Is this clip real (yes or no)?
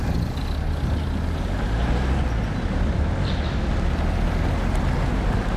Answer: yes